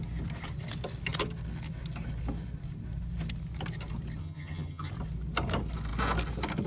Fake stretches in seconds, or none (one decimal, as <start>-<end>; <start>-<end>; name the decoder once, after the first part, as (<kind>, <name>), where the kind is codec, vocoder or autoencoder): 4.2-4.9 (vocoder, HiFi-GAN)